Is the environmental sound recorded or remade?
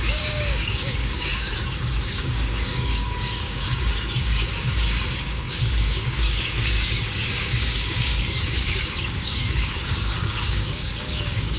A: remade